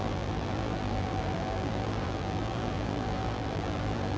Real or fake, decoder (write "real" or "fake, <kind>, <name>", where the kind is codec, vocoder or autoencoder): fake, vocoder, BigVGAN v2